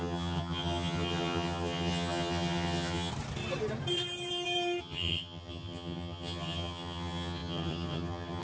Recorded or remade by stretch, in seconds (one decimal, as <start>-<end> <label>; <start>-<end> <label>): 0.0-3.1 remade; 3.1-4.8 recorded; 4.8-8.4 remade